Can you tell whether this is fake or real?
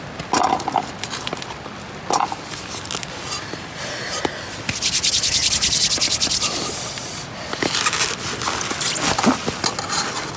real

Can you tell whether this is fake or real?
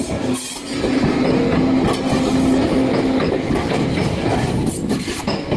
real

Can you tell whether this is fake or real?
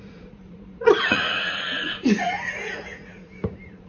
fake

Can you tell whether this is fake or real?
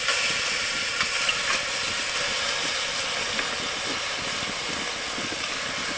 real